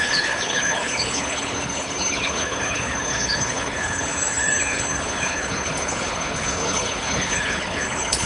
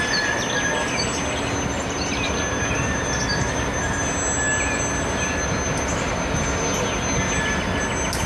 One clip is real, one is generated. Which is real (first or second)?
second